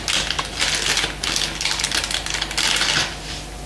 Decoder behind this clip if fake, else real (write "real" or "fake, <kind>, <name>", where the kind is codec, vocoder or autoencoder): real